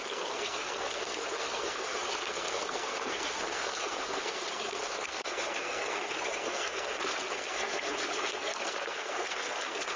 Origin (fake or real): fake